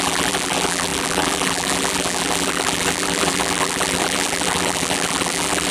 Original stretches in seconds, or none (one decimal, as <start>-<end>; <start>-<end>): none